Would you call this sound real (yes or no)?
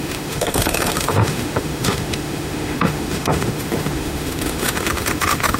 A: no